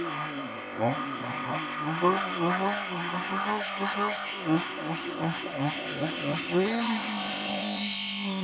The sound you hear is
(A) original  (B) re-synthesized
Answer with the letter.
B